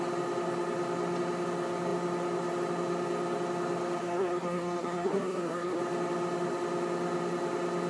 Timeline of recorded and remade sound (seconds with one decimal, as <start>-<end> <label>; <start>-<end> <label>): 0.0-4.0 recorded; 4.0-5.8 remade; 5.8-7.9 recorded